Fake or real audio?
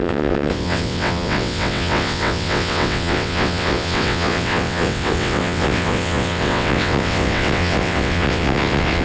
fake